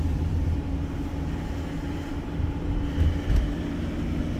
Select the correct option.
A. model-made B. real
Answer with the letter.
B